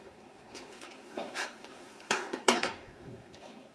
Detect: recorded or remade remade